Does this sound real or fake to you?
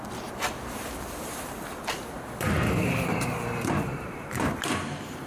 fake